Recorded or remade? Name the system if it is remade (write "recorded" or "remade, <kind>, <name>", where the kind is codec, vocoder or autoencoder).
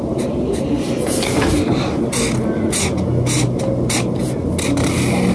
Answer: recorded